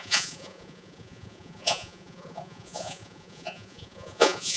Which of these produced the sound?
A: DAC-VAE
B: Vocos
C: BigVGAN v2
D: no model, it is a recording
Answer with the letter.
B